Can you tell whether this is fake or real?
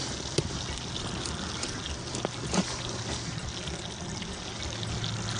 real